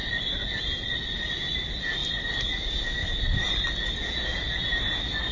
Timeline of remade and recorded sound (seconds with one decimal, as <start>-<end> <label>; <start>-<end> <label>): 0.0-1.0 remade; 1.0-2.0 recorded; 2.0-2.5 remade; 2.5-3.0 recorded; 3.0-3.7 remade; 3.7-5.3 recorded